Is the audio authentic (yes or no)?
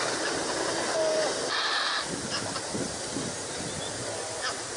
yes